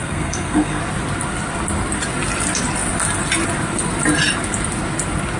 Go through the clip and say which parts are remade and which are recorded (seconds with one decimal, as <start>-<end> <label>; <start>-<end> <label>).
0.0-0.8 remade; 0.8-5.4 recorded